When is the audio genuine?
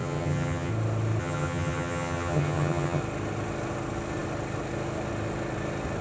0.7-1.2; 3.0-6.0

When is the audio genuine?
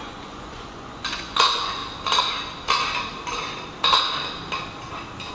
1.8-5.3